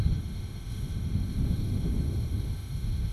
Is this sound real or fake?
fake